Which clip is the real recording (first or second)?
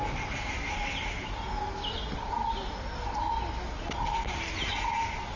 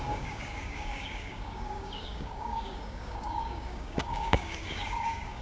first